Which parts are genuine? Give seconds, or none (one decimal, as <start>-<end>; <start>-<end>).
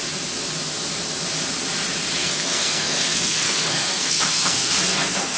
0.0-2.2